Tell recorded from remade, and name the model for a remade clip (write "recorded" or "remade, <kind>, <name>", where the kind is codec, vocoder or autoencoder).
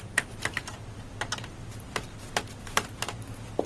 remade, vocoder, BigVGAN v2